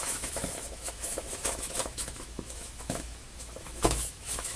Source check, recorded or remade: remade